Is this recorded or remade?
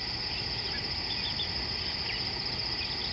recorded